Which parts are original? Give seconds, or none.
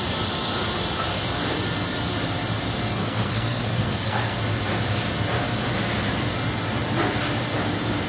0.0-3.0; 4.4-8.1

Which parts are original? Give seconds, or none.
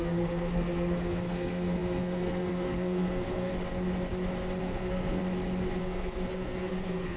3.5-4.6; 5.2-5.8